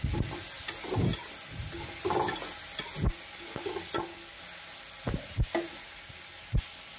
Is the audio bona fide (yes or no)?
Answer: yes